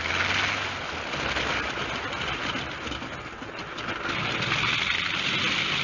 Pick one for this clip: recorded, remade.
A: recorded